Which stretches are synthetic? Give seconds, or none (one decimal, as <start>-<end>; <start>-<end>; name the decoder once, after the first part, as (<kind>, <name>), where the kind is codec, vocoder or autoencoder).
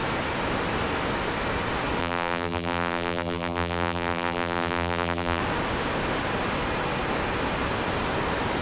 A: 2.0-5.4 (vocoder, BigVGAN v2)